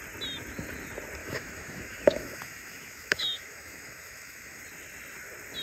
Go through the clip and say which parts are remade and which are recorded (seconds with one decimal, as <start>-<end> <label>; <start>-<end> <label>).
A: 0.0-1.2 recorded; 1.2-4.6 remade; 4.6-5.6 recorded